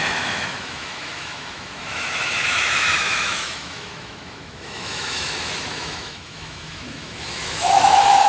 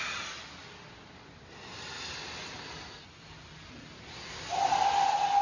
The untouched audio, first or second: second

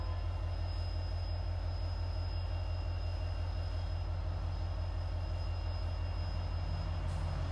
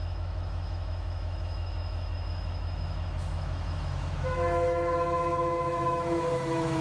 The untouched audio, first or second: first